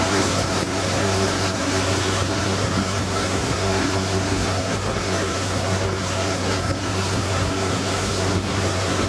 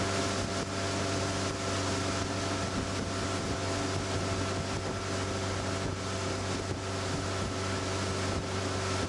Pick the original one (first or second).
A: second